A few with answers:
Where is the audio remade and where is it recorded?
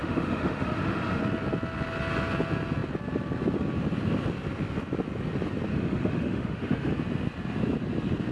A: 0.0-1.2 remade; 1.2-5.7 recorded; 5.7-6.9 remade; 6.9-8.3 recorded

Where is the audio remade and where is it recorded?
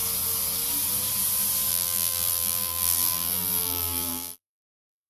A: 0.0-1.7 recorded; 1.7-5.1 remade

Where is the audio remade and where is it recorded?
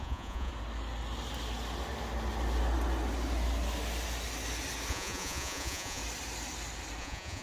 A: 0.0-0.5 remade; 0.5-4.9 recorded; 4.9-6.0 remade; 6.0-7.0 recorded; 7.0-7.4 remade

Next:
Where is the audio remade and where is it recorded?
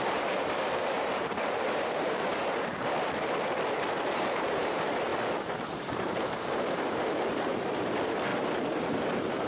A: 0.0-2.3 remade; 2.3-4.0 recorded; 4.0-5.1 remade; 5.1-5.8 recorded; 5.8-9.5 remade